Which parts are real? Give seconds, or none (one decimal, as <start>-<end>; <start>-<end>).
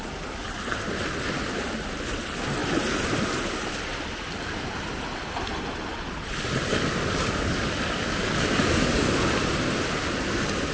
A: 0.0-6.7; 9.4-10.7